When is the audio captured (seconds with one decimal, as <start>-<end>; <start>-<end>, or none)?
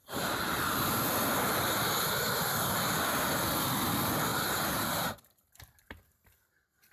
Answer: 0.0-4.3; 5.8-6.9